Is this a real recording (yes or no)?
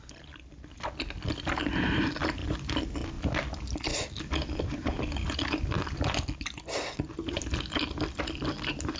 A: yes